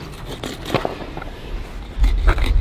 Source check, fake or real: real